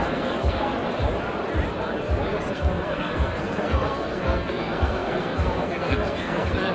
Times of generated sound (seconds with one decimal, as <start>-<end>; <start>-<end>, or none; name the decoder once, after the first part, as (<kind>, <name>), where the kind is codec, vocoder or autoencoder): 0.0-0.7 (codec, SNAC); 2.5-6.7